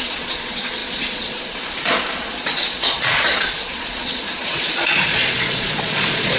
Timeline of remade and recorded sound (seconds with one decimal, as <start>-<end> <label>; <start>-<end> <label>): 0.0-6.4 remade

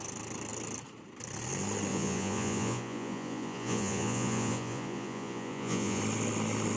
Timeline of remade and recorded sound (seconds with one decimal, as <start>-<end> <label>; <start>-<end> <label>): 0.0-1.9 recorded; 1.9-6.0 remade; 6.0-6.8 recorded

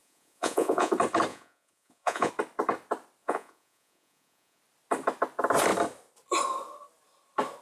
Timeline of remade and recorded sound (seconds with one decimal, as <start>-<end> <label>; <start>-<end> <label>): 0.0-0.9 remade; 0.9-1.3 recorded; 1.3-2.3 remade; 2.3-3.2 recorded; 3.2-4.6 remade; 4.6-7.6 recorded

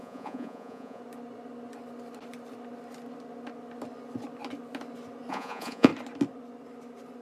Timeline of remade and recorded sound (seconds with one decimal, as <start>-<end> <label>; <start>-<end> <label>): 0.0-1.0 remade; 1.0-5.3 recorded; 5.3-5.9 remade; 5.9-7.2 recorded

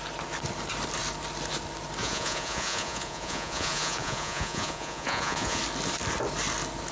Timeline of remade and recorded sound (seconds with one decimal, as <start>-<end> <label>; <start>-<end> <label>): 0.0-2.0 recorded; 2.0-5.6 remade; 5.6-6.9 recorded

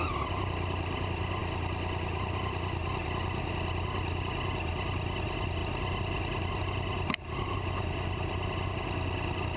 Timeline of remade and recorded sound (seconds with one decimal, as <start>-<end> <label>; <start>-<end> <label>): 0.0-9.6 recorded